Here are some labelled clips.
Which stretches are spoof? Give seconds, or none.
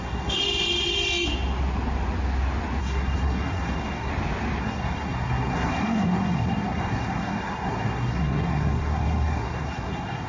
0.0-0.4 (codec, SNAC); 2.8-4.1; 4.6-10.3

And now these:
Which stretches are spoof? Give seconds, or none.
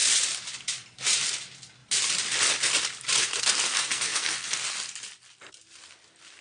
3.2-4.6 (codec, SNAC)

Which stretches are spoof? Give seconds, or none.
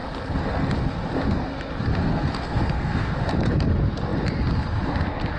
1.9-3.1 (codec, SNAC)